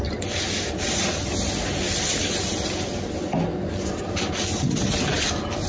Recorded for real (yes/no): yes